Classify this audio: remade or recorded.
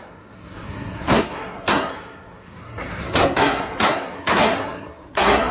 remade